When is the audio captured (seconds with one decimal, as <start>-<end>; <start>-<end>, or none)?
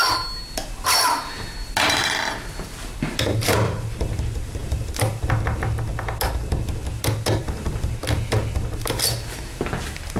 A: 0.0-10.2